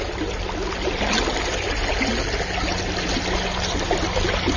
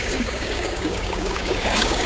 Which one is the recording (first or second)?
first